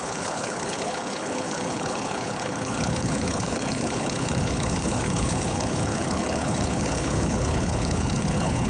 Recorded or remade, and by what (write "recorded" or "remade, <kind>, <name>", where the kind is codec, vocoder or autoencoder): remade, codec, HILCodec